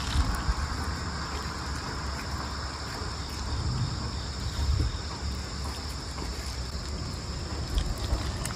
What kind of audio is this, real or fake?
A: real